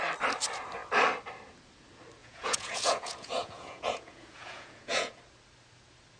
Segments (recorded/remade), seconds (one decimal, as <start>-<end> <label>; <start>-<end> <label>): 0.0-2.2 recorded; 2.2-5.2 remade; 5.2-6.2 recorded